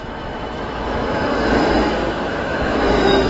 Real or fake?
fake